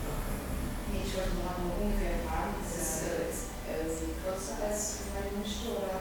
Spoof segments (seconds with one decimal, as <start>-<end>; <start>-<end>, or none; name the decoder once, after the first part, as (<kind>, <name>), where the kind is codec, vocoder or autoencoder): 2.9-3.4 (autoencoder, DAC-VAE)